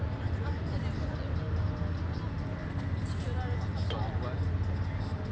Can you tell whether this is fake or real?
real